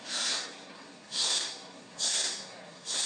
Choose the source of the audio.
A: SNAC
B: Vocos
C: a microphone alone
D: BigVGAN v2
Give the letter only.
A